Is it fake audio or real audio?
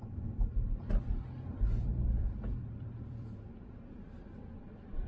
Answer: fake